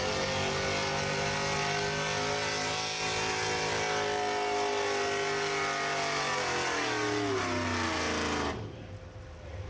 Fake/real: real